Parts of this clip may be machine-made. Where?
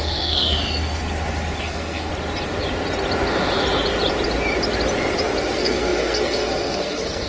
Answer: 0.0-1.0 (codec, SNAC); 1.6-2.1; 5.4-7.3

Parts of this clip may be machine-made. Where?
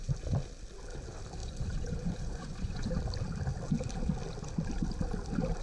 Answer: 1.4-2.9 (vocoder, Vocos)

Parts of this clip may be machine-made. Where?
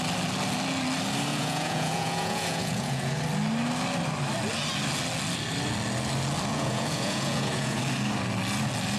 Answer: 1.3-3.1 (vocoder, Vocos); 6.5-7.8